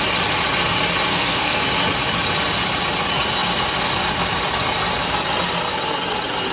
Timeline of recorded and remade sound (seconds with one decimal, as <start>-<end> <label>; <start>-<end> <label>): 0.0-1.1 recorded; 1.1-1.6 remade; 1.6-6.5 recorded